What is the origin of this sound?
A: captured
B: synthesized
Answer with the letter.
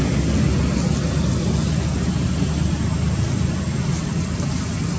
A